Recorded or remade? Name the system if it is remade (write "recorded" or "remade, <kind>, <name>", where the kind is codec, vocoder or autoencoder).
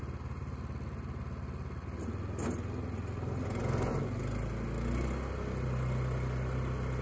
recorded